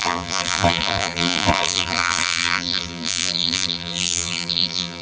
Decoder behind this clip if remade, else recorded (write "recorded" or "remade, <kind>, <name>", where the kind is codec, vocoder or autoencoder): remade, vocoder, BigVGAN v2